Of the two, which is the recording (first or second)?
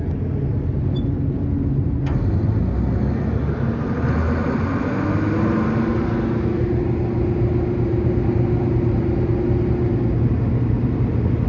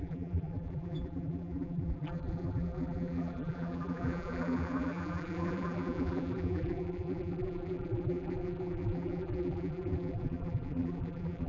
first